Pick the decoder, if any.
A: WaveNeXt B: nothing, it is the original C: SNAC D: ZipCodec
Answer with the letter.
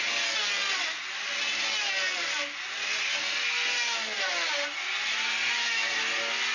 B